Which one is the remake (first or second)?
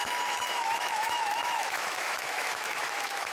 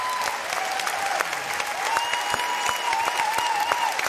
first